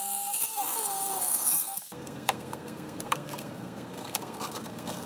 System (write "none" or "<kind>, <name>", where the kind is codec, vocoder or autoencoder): codec, SNAC